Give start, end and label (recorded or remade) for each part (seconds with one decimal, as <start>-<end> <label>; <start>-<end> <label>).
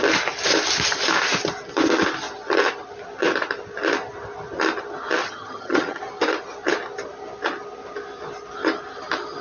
0.0-5.2 recorded; 5.2-6.0 remade; 6.0-9.4 recorded